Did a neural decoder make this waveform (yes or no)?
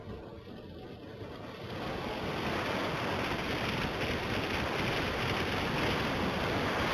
no